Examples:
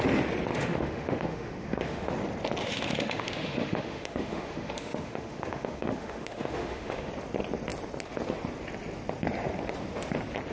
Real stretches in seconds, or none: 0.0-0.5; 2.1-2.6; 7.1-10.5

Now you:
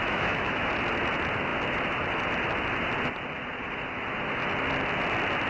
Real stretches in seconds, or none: 0.7-5.5

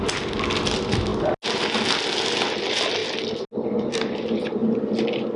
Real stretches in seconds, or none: 0.0-5.4

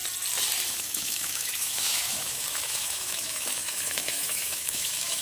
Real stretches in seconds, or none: 0.0-0.7

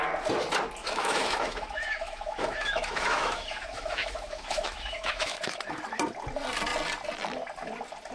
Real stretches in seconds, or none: 0.0-0.8; 5.7-8.1

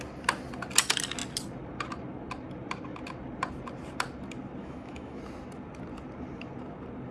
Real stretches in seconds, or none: 0.0-4.6; 5.2-7.1

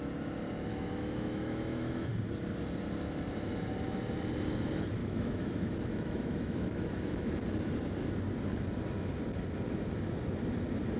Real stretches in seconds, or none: 0.0-0.7; 2.1-5.0; 7.3-11.0